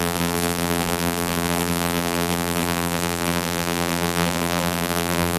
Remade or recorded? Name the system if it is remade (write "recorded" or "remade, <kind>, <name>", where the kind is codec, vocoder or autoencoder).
remade, vocoder, BigVGAN v2